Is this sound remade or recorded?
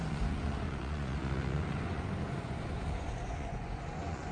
remade